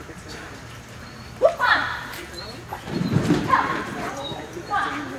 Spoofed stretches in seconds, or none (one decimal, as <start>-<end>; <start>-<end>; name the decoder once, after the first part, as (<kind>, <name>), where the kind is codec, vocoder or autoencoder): 0.0-1.8 (vocoder, BigVGAN v2); 2.4-5.2